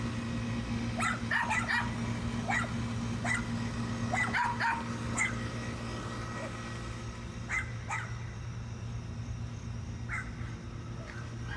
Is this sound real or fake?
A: real